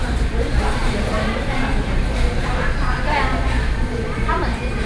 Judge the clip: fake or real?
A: fake